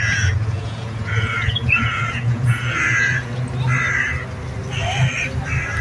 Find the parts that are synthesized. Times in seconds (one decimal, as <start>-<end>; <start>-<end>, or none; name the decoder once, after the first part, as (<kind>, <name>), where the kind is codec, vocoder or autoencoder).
0.0-3.3 (vocoder, Vocos)